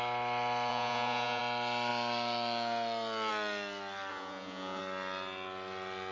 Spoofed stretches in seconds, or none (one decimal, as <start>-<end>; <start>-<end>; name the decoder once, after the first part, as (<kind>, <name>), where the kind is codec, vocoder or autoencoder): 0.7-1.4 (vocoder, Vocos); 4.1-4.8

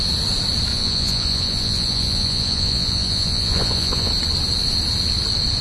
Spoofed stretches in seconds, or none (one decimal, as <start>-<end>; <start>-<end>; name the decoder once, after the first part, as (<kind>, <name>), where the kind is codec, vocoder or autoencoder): 0.7-4.1 (vocoder, Vocos)

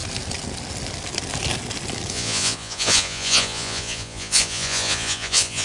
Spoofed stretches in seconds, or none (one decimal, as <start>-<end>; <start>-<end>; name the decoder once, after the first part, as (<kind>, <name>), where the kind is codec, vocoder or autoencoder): 2.1-5.6 (vocoder, Vocos)